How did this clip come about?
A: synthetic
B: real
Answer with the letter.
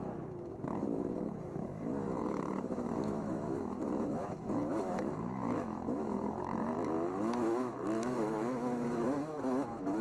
A